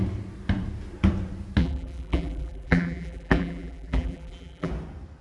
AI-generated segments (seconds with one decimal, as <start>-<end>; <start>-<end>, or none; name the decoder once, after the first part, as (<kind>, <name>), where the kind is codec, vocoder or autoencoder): 1.6-4.7 (vocoder, BigVGAN v2)